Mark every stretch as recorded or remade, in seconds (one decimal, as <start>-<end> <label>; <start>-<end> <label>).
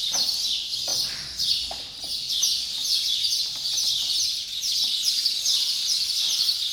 0.0-6.7 recorded